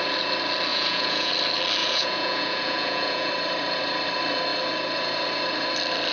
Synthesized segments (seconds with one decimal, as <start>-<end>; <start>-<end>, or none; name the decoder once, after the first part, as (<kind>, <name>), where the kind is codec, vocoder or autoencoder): 0.7-1.3 (vocoder, Vocos); 1.8-3.3